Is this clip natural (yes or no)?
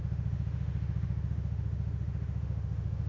no